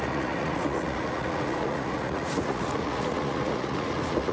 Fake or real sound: fake